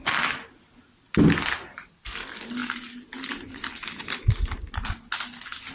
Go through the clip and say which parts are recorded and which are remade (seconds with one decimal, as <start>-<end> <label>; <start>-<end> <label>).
0.0-5.7 recorded